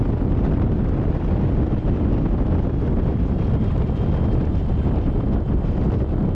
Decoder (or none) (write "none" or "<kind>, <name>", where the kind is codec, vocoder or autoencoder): none